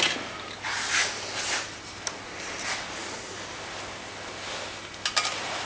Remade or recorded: recorded